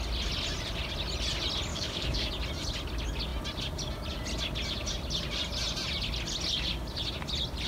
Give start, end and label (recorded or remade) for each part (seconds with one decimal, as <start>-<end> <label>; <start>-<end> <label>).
0.0-1.7 recorded; 1.7-2.3 remade; 2.3-7.7 recorded